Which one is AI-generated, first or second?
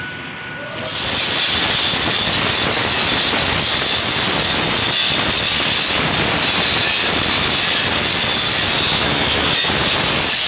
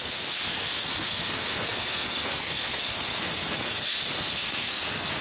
second